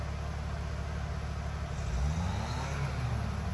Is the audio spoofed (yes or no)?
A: no